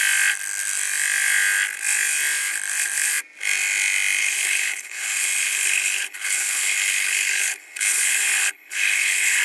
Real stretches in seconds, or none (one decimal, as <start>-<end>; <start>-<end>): 0.0-4.2